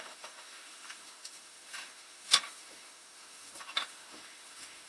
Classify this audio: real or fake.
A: fake